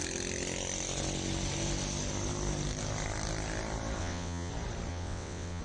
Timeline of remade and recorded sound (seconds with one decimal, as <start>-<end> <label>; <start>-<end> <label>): 0.0-4.0 recorded; 4.0-4.5 remade; 4.5-4.9 recorded; 4.9-5.6 remade